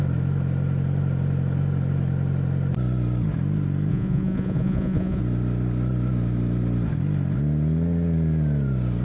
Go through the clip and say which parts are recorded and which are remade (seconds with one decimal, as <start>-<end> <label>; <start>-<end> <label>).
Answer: 0.0-3.9 recorded; 3.9-5.2 remade; 5.2-9.0 recorded